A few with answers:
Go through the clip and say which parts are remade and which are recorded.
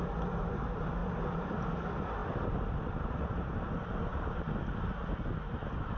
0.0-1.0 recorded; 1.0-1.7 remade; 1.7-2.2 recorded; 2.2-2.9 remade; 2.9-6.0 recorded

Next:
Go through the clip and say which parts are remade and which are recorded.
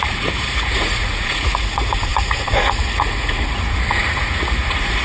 0.0-5.0 remade